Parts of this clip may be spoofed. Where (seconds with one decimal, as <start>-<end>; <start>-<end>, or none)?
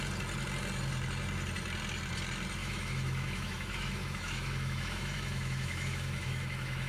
2.6-6.9